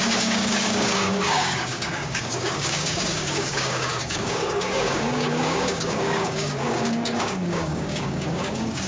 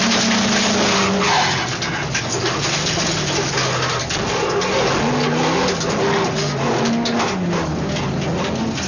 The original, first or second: second